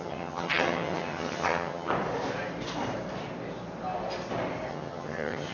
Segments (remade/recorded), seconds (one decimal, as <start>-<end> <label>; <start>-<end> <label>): 0.0-1.9 remade; 1.9-4.7 recorded; 4.7-5.5 remade